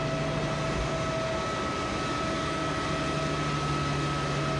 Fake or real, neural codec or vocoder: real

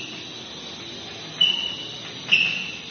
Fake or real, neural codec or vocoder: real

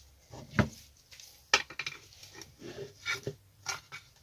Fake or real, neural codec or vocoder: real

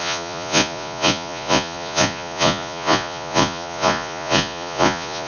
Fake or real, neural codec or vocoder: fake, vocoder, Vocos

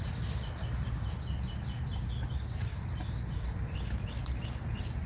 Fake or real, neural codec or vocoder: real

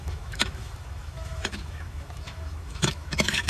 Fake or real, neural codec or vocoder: fake, autoencoder, DAC-VAE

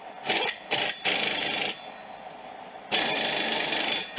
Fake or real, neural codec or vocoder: real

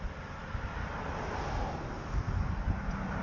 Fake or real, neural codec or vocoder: real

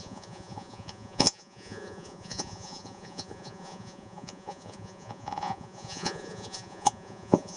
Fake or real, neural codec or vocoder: fake, vocoder, Vocos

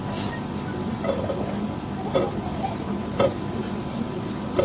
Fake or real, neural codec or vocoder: real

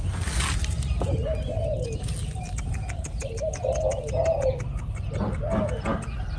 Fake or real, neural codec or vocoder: real